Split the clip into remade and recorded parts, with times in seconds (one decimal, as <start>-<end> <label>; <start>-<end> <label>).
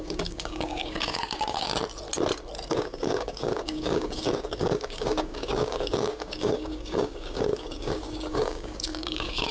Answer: 0.0-1.7 remade; 1.7-2.7 recorded; 2.7-9.5 remade